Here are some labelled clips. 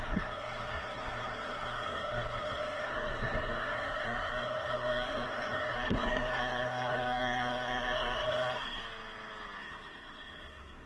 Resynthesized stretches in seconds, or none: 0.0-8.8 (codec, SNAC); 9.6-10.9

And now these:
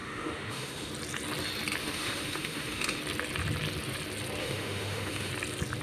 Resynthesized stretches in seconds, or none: 0.0-0.9 (autoencoder, DAC-VAE); 1.8-3.0; 4.4-5.3